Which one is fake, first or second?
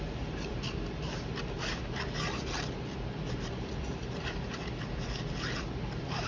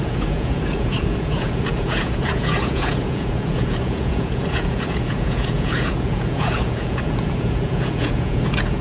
second